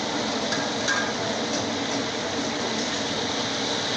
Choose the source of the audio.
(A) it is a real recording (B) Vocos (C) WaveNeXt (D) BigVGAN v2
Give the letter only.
A